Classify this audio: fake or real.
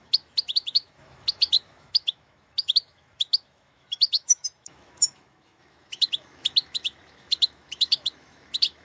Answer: fake